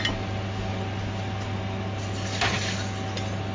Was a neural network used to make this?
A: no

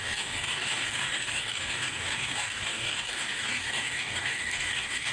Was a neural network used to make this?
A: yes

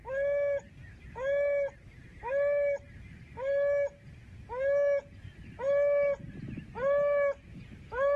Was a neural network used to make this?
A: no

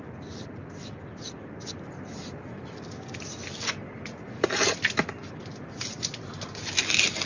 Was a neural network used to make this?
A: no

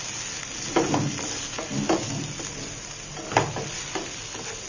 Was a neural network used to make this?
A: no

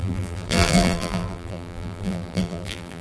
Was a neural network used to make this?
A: yes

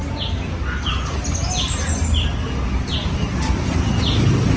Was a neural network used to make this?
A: no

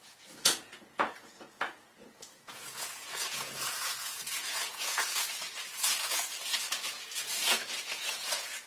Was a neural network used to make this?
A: yes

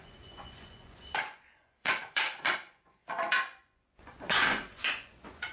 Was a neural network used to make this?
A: yes